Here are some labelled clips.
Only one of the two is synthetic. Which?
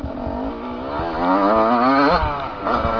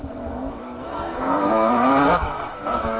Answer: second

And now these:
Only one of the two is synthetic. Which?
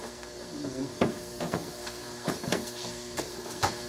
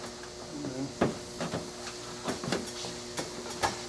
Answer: first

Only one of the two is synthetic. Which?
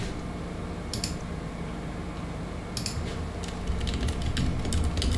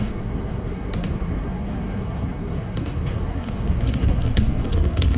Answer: second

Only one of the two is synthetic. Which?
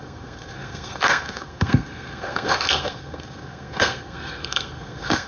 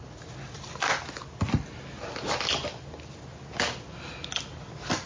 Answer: first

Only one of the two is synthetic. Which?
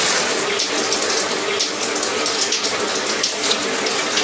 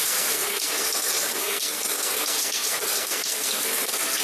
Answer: second